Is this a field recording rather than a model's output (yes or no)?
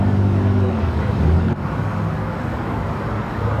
no